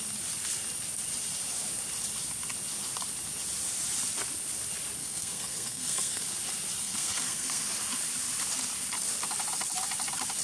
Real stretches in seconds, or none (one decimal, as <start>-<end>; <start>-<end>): 0.0-5.0; 6.2-6.8; 7.6-10.4